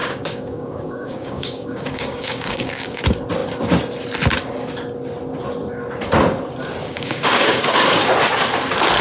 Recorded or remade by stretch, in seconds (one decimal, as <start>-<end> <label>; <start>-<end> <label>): 0.0-3.0 remade; 3.0-6.8 recorded; 6.8-8.1 remade; 8.1-9.0 recorded